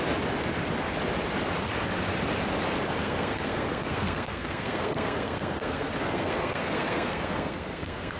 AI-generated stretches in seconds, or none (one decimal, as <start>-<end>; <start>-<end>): 3.0-8.2